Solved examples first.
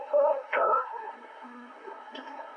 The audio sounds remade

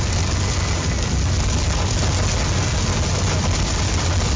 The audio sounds recorded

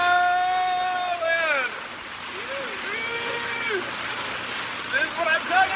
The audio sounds recorded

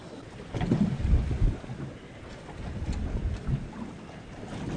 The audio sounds recorded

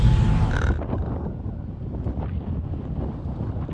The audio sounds recorded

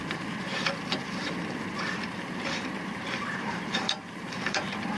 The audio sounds remade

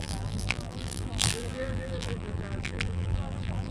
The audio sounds remade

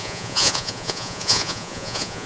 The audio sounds remade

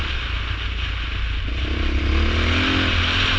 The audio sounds recorded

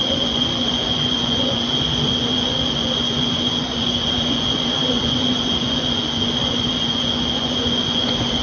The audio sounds remade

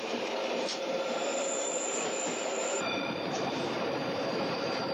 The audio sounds remade